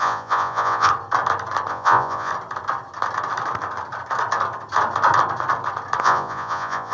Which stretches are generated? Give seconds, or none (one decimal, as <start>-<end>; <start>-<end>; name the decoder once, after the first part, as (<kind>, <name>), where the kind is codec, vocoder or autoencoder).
0.0-0.9 (vocoder, Vocos); 1.7-2.3; 6.0-6.9